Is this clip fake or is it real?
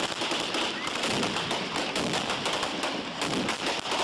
real